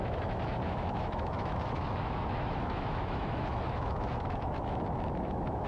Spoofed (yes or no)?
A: yes